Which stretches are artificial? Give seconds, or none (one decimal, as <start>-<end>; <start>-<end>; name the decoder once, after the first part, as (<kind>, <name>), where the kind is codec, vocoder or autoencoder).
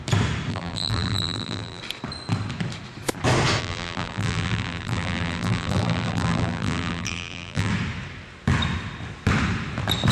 0.5-1.8 (vocoder, BigVGAN v2); 3.6-7.7